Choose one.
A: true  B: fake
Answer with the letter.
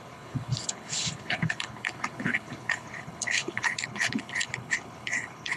B